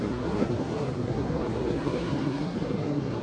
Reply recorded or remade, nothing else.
remade